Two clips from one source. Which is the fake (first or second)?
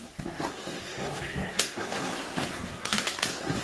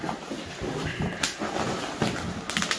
first